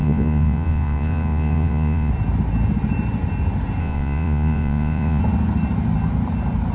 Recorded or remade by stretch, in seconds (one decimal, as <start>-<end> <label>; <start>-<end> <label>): 0.0-2.1 remade; 2.1-3.8 recorded; 3.8-5.2 remade; 5.2-6.7 recorded

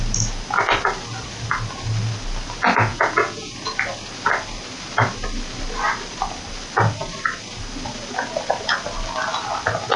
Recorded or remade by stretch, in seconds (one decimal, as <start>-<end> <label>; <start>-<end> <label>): 0.0-2.9 recorded; 2.9-3.5 remade; 3.5-10.0 recorded

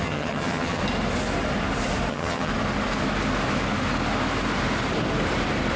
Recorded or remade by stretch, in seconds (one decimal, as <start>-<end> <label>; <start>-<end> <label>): 0.0-0.8 remade; 0.8-2.1 recorded; 2.1-2.5 remade; 2.5-5.8 recorded

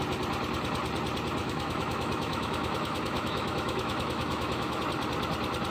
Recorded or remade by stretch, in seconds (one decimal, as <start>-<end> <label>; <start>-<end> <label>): 0.0-1.4 recorded; 1.4-4.8 remade; 4.8-5.7 recorded

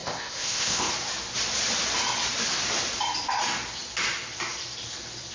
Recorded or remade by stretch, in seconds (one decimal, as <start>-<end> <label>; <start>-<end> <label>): 0.0-0.9 remade; 0.9-5.3 recorded

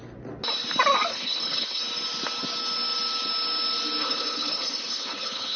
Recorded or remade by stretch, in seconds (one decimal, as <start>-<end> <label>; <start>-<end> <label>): 0.0-1.1 recorded; 1.1-1.8 remade; 1.8-4.0 recorded; 4.0-5.6 remade

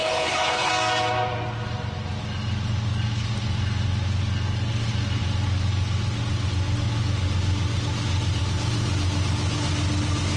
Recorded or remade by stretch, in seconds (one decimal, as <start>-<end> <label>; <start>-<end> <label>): 0.0-0.7 remade; 0.7-10.4 recorded